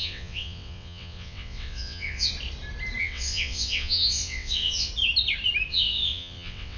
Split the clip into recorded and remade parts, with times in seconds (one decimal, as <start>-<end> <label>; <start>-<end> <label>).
0.0-2.3 remade; 2.3-3.0 recorded; 3.0-4.9 remade; 4.9-5.7 recorded; 5.7-6.8 remade